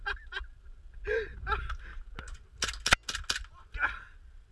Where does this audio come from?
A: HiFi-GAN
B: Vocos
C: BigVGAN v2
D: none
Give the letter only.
D